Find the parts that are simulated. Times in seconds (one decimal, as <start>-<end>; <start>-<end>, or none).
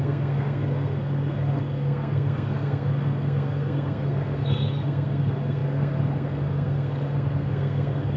0.0-8.2